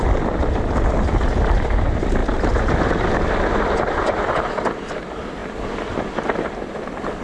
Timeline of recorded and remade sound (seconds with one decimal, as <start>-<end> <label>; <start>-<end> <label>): 0.0-5.4 remade; 5.4-6.7 recorded; 6.7-7.2 remade